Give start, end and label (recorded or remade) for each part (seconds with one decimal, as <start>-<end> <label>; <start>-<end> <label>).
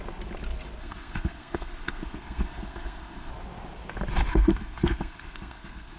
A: 0.0-0.8 recorded; 0.8-3.3 remade; 3.3-4.3 recorded; 4.3-6.0 remade